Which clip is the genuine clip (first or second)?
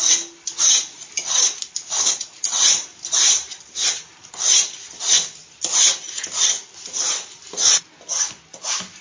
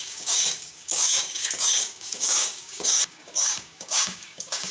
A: first